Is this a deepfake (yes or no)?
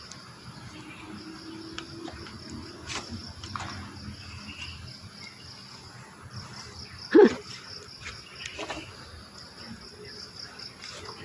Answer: no